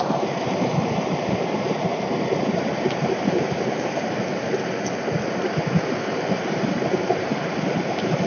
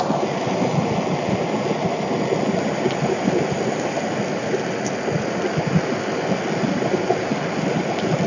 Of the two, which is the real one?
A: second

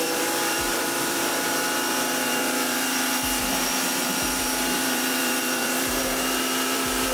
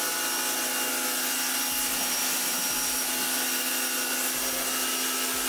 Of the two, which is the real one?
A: second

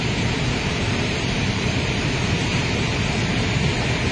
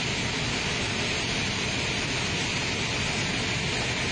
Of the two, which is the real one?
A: second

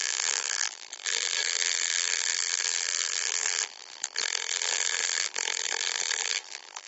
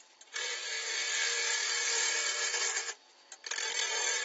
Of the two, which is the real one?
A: second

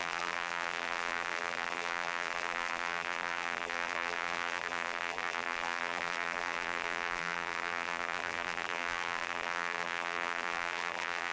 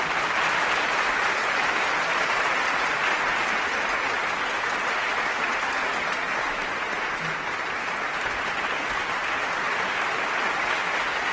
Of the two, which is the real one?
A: second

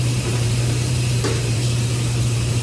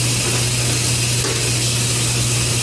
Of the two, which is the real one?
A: second